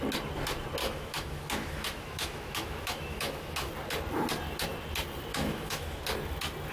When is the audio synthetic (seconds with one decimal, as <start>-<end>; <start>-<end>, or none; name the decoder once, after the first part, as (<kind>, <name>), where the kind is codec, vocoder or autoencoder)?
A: 0.8-3.7 (autoencoder, DAC-VAE); 5.3-6.0